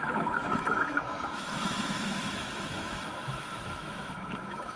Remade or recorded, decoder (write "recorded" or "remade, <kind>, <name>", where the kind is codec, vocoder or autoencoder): remade, autoencoder, DAC-VAE